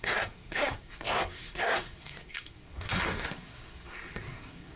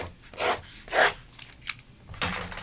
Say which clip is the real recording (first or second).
second